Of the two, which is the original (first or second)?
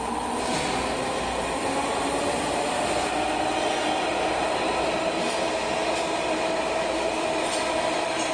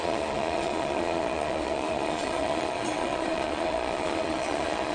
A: first